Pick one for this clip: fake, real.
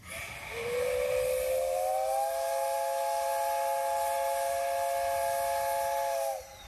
real